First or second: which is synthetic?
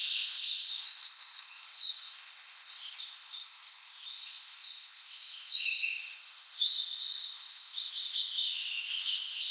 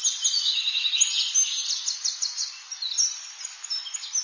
first